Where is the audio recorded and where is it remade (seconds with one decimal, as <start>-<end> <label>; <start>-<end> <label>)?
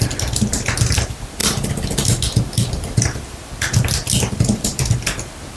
0.0-5.6 recorded